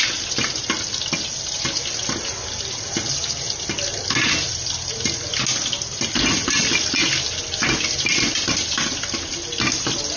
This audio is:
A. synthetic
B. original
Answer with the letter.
B